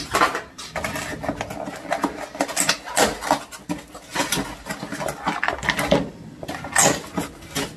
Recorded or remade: recorded